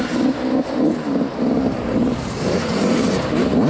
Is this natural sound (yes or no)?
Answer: no